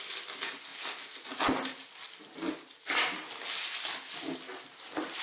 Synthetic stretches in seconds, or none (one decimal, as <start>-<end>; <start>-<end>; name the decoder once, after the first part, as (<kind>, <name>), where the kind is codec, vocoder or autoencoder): none